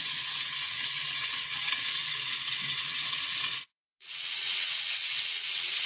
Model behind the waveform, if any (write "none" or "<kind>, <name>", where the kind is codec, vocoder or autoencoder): vocoder, WaveNeXt